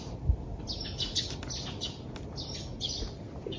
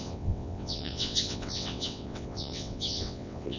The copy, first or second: second